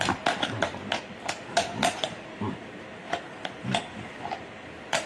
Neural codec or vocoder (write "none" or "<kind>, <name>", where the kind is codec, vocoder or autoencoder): none